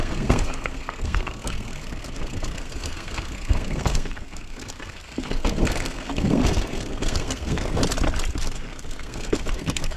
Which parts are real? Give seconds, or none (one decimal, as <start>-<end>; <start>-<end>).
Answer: 7.8-8.4

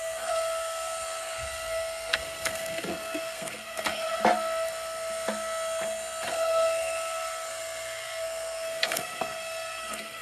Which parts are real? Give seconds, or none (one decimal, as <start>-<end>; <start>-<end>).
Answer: 4.0-6.3

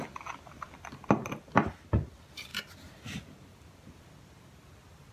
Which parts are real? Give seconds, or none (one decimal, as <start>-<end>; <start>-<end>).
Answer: 0.0-5.1

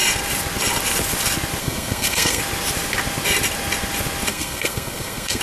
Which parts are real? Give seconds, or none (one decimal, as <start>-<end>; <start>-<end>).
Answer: 0.0-1.6; 2.4-4.3

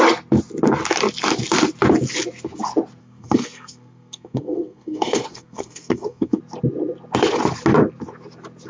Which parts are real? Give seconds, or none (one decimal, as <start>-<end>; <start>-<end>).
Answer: 0.0-3.0; 6.4-8.7

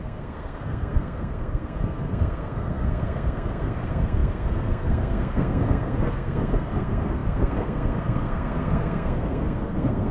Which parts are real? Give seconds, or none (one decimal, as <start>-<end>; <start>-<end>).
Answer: none